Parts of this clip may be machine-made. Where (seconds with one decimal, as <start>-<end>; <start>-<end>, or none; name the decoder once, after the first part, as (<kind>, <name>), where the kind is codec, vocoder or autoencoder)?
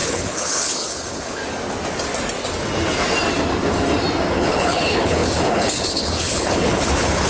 0.0-1.4 (codec, HILCodec); 4.3-7.3